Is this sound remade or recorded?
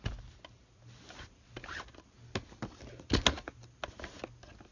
recorded